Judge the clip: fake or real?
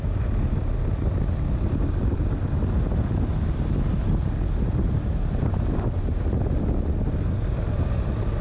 real